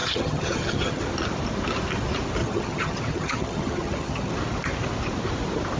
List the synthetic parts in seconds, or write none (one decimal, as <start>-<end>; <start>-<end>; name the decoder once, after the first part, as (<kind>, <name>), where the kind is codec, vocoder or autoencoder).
0.0-1.0 (vocoder, HiFi-GAN); 2.4-4.3